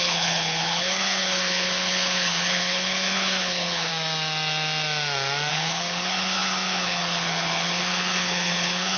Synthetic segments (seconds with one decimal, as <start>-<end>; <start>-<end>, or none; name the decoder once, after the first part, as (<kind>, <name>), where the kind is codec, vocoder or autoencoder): 0.0-3.9 (codec, HILCodec); 5.5-9.0